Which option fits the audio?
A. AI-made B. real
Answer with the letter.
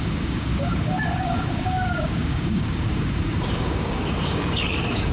A